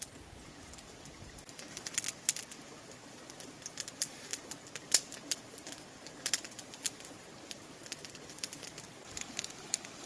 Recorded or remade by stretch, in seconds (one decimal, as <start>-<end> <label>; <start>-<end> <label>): 0.0-10.1 recorded